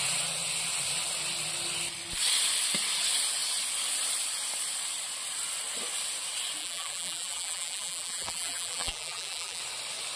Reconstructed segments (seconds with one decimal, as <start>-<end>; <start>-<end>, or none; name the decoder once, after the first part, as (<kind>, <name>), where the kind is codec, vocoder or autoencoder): 6.6-9.6 (vocoder, BigVGAN v2)